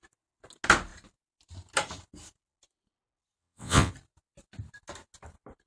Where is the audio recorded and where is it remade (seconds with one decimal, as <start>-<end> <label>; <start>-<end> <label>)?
0.0-3.4 recorded; 3.4-3.9 remade; 3.9-5.7 recorded